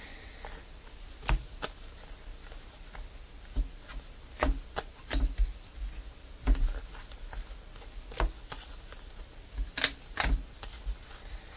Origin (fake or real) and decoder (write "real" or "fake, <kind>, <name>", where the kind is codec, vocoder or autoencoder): real